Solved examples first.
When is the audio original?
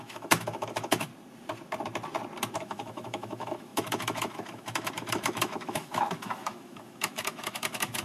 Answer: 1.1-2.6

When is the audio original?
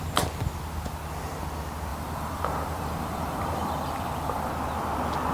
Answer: 0.0-1.9; 4.5-5.3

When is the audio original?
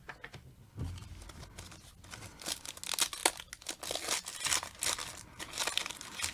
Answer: 0.0-6.3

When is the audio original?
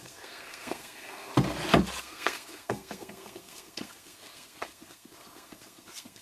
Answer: 1.3-2.0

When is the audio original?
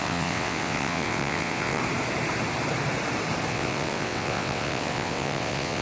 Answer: 1.8-3.5